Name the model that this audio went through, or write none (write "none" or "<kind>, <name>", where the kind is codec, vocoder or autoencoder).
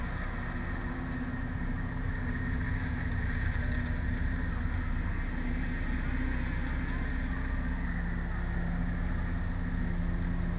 none